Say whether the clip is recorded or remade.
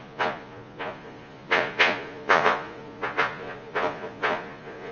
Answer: remade